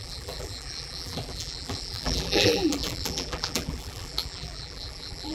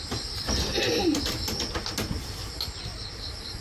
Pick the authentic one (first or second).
second